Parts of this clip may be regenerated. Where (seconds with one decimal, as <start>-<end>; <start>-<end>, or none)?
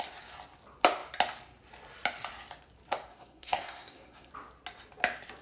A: 3.1-4.3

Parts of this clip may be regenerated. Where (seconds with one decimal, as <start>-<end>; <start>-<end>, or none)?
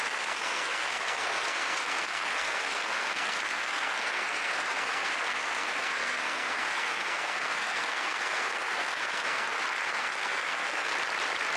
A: 0.0-10.9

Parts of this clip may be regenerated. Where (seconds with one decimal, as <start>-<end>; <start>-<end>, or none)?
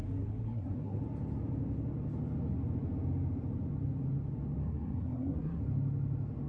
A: 0.4-1.0; 4.6-5.6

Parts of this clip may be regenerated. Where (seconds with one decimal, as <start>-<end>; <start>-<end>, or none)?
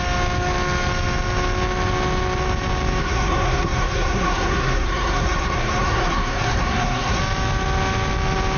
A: 3.0-7.2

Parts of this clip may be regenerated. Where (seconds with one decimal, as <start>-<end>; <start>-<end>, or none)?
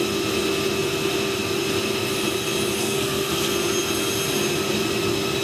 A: 2.8-3.5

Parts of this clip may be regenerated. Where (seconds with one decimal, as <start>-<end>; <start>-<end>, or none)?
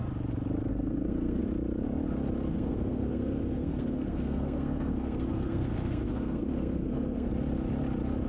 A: 0.7-1.4; 2.5-7.3